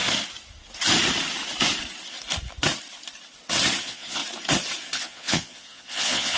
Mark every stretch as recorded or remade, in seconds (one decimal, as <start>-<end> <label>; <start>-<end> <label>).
0.0-3.8 recorded; 3.8-4.2 remade; 4.2-5.0 recorded; 5.0-6.4 remade